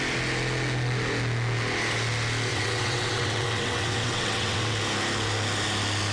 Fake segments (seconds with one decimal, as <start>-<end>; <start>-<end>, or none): 2.5-4.7